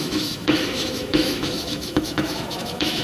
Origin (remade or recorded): remade